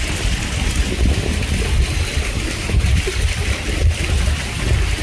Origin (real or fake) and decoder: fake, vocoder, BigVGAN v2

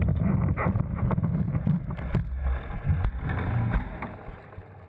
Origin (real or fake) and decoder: real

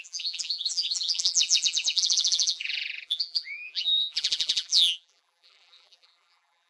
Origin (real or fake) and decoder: fake, vocoder, BigVGAN v2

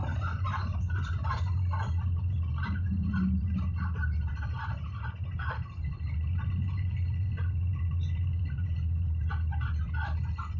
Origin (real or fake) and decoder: fake, vocoder, BigVGAN v2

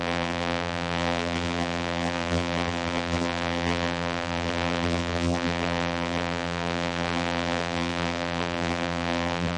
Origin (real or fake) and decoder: fake, vocoder, BigVGAN v2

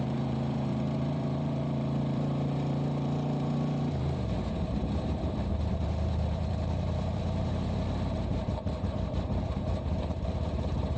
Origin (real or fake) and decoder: fake, vocoder, BigVGAN v2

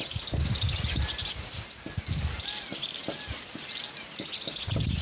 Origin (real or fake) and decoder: real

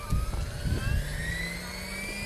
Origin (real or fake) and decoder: real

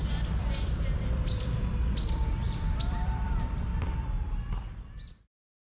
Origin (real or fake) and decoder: fake, vocoder, BigVGAN v2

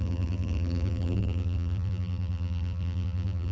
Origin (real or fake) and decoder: fake, vocoder, BigVGAN v2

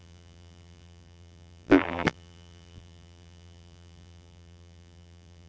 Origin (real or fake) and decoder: fake, vocoder, BigVGAN v2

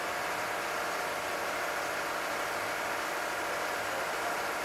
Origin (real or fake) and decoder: real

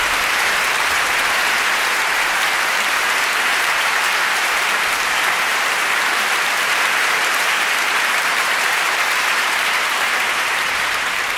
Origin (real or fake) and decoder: fake, vocoder, BigVGAN v2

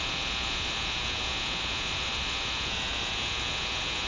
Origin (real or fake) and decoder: real